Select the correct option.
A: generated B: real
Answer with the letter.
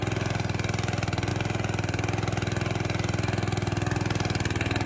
B